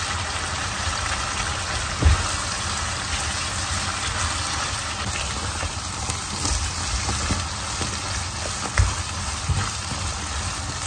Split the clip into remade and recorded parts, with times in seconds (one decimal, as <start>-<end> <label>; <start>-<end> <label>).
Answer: 0.0-0.6 recorded; 0.6-1.2 remade; 1.2-5.4 recorded; 5.4-5.9 remade; 5.9-10.9 recorded